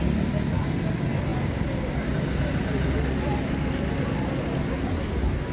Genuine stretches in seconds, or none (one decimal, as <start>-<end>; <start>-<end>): 0.0-5.5